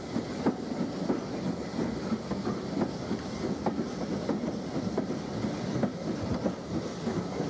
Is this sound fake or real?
real